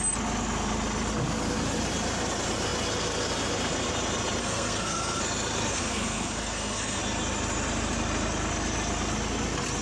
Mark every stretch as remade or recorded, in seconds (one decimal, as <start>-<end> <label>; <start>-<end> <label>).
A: 0.0-4.4 recorded; 4.4-5.2 remade; 5.2-5.7 recorded; 5.7-7.0 remade; 7.0-9.8 recorded